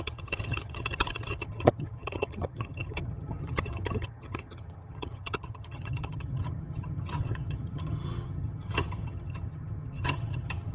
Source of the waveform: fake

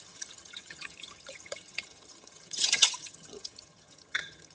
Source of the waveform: fake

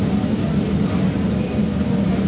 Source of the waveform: real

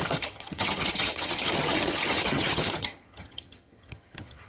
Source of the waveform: fake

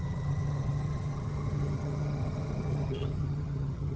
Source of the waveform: fake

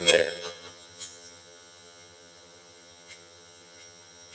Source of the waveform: fake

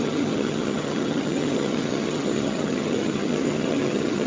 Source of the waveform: fake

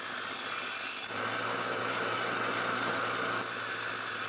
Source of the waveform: real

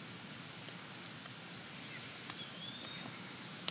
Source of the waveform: real